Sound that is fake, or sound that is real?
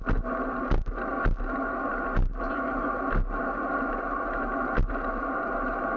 real